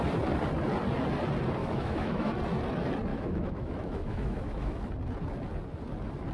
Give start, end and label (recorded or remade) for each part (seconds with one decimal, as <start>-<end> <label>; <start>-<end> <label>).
0.0-1.6 recorded; 1.6-2.3 remade; 2.3-3.1 recorded; 3.1-4.8 remade; 4.8-6.3 recorded

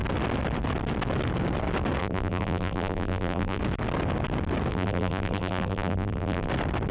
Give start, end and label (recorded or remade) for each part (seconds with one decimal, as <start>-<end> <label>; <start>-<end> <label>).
0.0-2.0 recorded; 2.0-3.6 remade; 3.6-4.7 recorded; 4.7-6.5 remade; 6.5-6.9 recorded

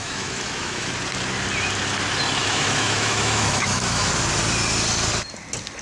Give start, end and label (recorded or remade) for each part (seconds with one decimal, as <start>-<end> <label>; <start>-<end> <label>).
0.0-0.9 remade; 0.9-2.4 recorded; 2.4-4.1 remade; 4.1-5.8 recorded

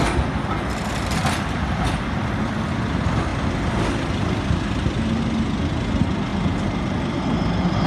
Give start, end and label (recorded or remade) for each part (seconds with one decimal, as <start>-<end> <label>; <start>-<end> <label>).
0.0-7.9 recorded

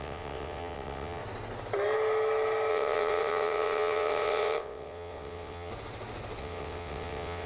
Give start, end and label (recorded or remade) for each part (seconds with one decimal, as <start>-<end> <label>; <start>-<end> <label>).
0.0-1.2 remade; 1.2-2.7 recorded; 2.7-5.7 remade; 5.7-6.4 recorded; 6.4-7.5 remade

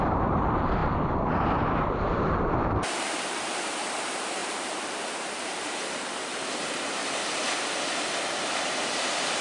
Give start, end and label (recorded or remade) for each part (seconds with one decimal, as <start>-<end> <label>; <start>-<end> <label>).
0.0-7.0 remade; 7.0-8.3 recorded; 8.3-9.4 remade